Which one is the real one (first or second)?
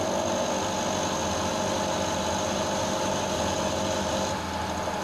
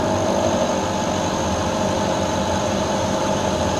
first